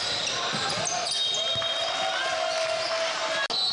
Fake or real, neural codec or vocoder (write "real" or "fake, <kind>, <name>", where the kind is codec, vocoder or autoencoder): real